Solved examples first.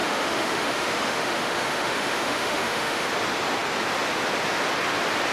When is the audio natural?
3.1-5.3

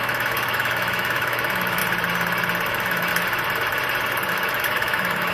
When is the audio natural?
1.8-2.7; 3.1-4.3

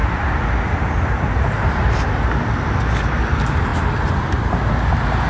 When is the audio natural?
0.0-5.3

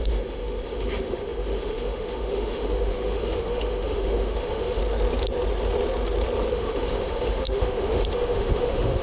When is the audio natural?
4.8-6.5

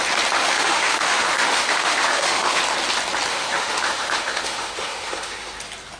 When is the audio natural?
0.0-0.4; 2.6-3.3; 5.6-6.0

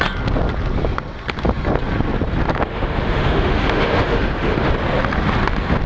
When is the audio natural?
0.0-2.7; 4.7-5.9

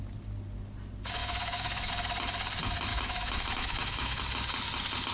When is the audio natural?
0.0-1.2; 1.9-2.9; 4.2-5.1